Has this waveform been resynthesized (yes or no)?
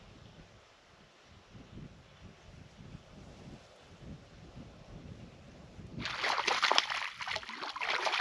no